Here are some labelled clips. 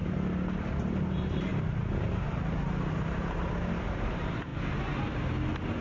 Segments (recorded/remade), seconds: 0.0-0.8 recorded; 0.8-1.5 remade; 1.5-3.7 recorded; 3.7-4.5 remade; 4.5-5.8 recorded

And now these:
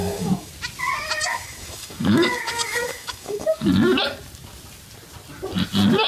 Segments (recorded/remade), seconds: 0.0-0.5 remade; 0.5-1.3 recorded; 1.3-3.7 remade; 3.7-6.1 recorded

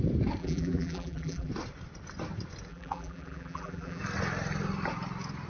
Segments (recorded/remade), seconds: 0.0-0.4 recorded; 0.4-1.5 remade; 1.5-2.7 recorded; 2.7-4.0 remade; 4.0-5.5 recorded

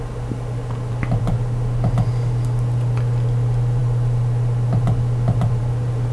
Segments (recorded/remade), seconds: 0.0-6.1 recorded